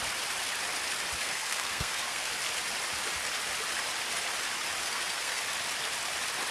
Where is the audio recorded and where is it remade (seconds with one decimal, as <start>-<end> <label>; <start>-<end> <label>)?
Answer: 0.0-1.2 recorded; 1.2-2.3 remade; 2.3-4.8 recorded; 4.8-5.4 remade; 5.4-6.5 recorded